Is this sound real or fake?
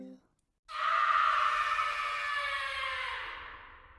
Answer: real